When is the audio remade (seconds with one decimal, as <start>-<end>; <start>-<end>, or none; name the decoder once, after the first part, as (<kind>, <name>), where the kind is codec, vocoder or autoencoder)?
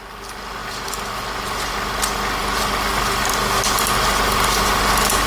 none